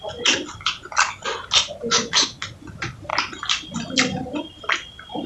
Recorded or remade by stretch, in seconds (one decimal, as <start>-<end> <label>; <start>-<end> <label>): 0.0-5.3 recorded